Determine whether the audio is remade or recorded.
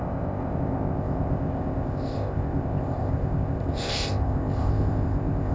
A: remade